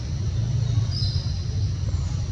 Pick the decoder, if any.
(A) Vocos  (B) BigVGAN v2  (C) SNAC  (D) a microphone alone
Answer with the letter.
D